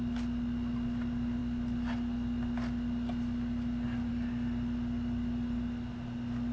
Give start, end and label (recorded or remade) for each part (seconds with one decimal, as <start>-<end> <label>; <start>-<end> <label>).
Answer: 0.0-6.5 recorded